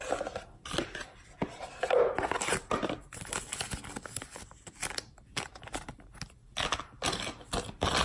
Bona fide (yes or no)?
yes